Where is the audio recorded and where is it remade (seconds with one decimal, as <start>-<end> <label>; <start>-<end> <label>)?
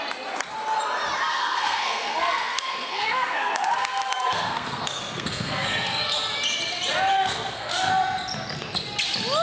0.0-1.3 recorded; 1.3-6.1 remade; 6.1-7.1 recorded; 7.1-7.9 remade; 7.9-9.4 recorded